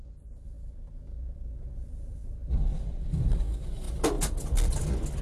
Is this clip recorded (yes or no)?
yes